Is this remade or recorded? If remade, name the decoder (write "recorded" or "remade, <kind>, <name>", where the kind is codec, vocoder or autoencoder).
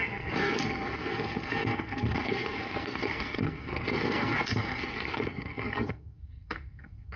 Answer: remade, codec, SNAC